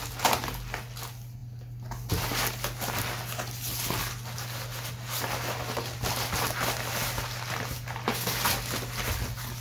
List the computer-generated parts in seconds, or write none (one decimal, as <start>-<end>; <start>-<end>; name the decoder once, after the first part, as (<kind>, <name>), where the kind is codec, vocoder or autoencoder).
none